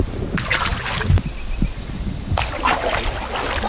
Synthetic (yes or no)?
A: no